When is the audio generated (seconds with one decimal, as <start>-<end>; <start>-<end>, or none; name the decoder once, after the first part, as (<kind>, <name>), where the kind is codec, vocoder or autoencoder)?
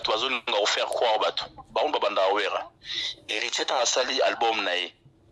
3.0-3.8 (codec, SNAC)